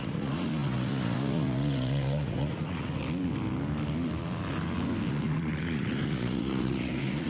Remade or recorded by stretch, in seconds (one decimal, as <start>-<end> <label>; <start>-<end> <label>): 0.0-3.0 remade; 3.0-5.1 recorded; 5.1-7.3 remade